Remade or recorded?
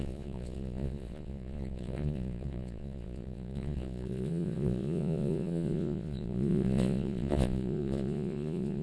remade